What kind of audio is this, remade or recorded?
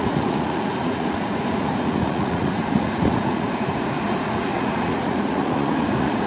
remade